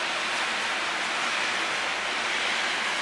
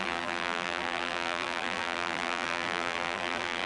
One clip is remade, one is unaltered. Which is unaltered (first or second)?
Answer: first